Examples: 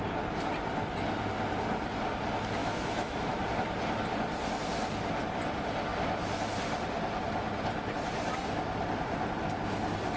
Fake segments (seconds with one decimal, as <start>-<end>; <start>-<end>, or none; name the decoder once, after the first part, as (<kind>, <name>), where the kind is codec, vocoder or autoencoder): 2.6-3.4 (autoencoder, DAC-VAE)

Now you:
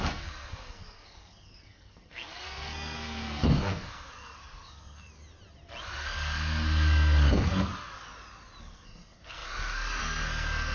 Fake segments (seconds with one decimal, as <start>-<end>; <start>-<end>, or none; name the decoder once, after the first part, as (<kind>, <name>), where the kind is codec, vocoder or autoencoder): 0.0-5.1 (codec, SNAC); 5.8-7.7; 8.6-10.7

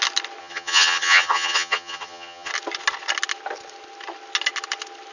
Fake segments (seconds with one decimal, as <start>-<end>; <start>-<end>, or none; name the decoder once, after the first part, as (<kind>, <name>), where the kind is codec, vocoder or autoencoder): 0.4-2.5 (vocoder, HiFi-GAN)

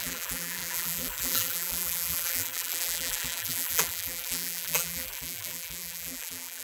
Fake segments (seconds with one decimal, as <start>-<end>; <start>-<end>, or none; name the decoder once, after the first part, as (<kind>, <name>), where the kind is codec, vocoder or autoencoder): 0.0-6.6 (vocoder, BigVGAN v2)